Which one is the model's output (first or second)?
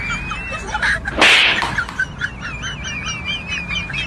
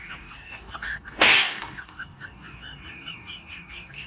second